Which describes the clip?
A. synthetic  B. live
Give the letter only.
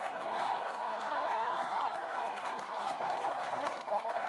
A